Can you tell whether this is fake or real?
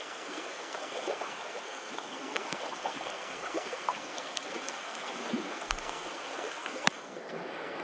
fake